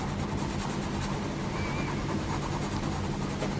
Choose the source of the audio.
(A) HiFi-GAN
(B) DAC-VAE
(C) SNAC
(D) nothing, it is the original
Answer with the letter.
D